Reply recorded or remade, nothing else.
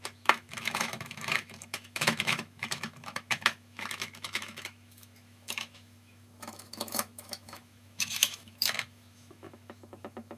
remade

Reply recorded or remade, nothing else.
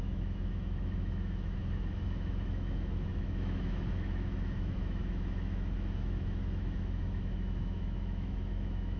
remade